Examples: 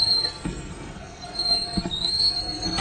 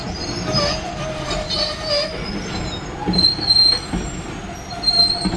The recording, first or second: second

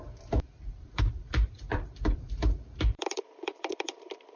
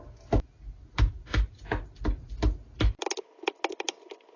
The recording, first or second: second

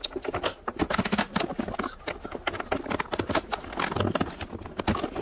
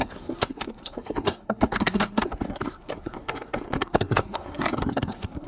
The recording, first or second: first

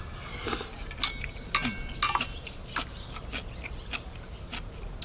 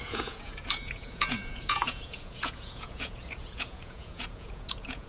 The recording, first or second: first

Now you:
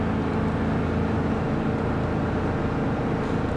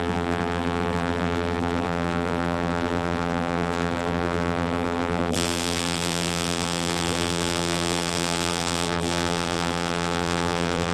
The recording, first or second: first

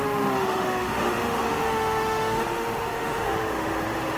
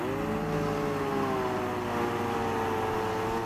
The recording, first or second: second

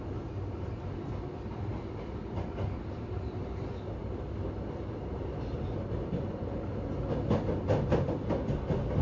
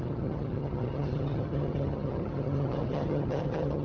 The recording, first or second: first